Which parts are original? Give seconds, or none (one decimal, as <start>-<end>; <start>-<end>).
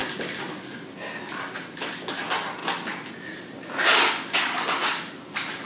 0.0-5.7